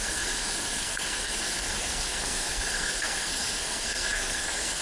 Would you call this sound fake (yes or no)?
yes